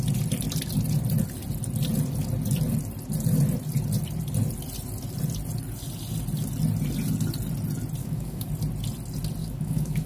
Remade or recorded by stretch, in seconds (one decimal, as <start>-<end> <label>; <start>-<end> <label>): 0.0-8.0 recorded; 8.0-8.5 remade; 8.5-9.4 recorded; 9.4-10.1 remade